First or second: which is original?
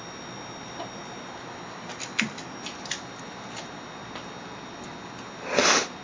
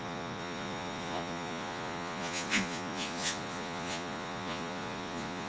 first